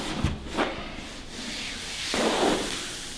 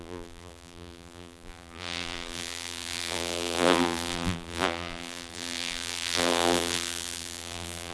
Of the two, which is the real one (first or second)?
first